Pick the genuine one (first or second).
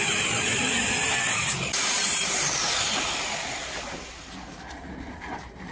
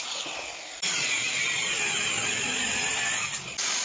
second